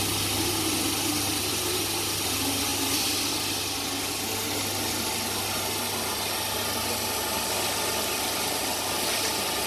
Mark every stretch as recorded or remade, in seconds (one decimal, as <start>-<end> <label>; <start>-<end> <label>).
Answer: 0.0-9.7 recorded